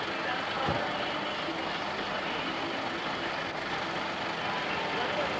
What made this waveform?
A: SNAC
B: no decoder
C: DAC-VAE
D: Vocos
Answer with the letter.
B